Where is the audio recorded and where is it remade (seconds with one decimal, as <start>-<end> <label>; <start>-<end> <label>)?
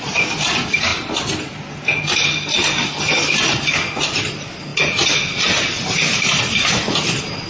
0.0-7.5 recorded